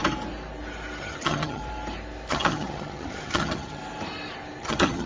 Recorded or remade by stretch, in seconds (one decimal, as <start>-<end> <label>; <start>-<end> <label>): 0.0-1.0 recorded; 1.0-1.6 remade; 1.6-2.3 recorded; 2.3-3.8 remade; 3.8-4.6 recorded; 4.6-5.1 remade